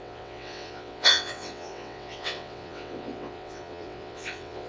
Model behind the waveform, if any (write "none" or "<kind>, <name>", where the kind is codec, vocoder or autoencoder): vocoder, WaveNeXt